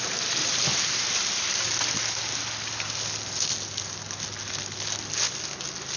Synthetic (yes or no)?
no